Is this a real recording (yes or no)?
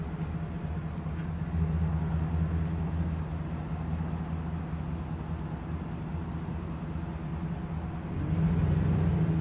yes